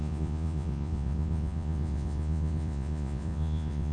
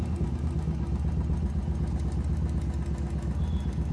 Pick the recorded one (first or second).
second